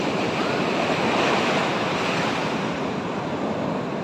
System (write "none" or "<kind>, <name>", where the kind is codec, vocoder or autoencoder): none